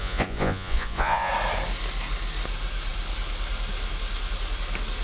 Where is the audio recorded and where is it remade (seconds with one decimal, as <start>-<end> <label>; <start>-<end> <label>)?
0.0-1.3 remade; 1.3-5.0 recorded